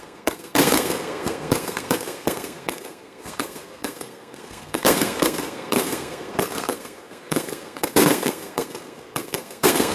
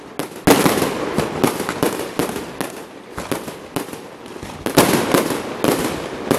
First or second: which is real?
second